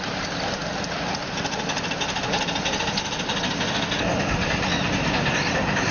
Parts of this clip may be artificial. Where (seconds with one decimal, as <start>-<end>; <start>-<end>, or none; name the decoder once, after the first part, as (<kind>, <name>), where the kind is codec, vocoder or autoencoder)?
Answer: none